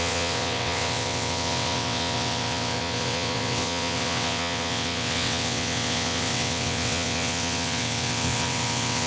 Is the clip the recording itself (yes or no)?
no